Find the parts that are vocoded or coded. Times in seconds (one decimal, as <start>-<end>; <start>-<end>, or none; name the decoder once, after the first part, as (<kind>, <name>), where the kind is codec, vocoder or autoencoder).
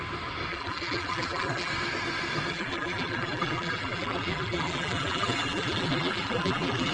0.5-1.7 (vocoder, BigVGAN v2); 2.5-6.9